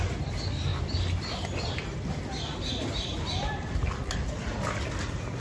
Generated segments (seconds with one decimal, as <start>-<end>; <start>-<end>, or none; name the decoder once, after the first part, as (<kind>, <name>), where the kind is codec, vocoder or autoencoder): none